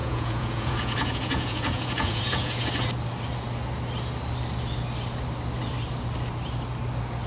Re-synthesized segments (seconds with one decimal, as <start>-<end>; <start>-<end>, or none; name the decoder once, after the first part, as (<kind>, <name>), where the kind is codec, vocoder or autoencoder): 0.0-2.7 (vocoder, Vocos)